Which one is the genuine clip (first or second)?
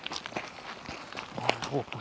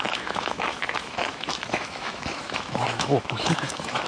first